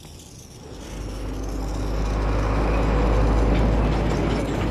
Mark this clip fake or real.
real